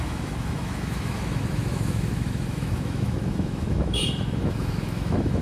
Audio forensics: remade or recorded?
remade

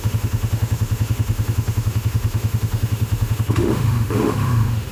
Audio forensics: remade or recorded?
remade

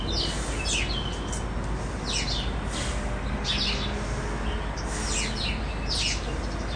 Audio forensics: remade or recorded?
recorded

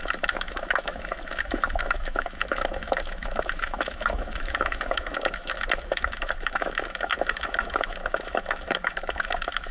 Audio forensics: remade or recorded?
remade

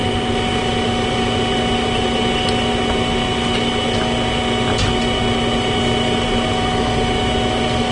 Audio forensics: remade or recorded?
recorded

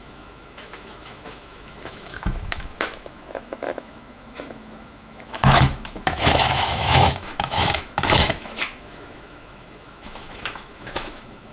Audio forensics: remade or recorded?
remade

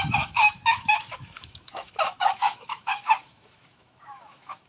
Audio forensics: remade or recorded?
remade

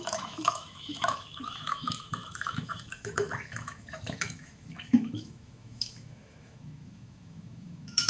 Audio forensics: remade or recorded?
remade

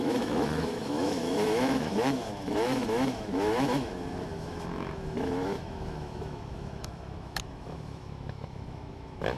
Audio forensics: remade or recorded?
remade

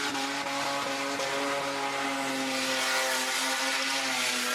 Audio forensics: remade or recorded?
recorded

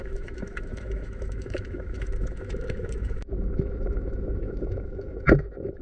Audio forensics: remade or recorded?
remade